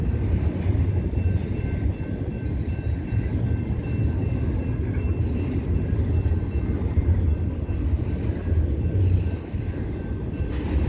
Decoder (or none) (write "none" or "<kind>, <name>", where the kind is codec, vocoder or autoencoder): none